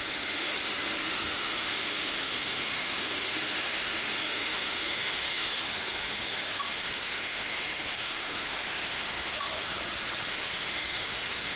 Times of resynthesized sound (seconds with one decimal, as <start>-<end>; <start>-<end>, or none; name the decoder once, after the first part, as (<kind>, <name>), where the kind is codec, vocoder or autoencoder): 0.0-0.5 (autoencoder, DAC-VAE); 1.0-9.7; 10.3-11.6